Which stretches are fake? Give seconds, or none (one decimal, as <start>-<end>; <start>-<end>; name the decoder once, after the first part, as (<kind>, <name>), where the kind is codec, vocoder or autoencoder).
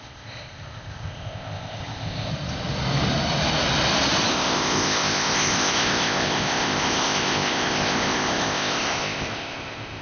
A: 0.0-2.3 (codec, ZipCodec); 4.3-10.0